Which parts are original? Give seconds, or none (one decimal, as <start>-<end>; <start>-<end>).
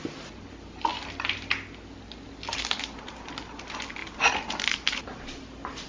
0.0-5.9